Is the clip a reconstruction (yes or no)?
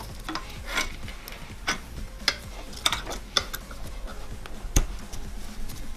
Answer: no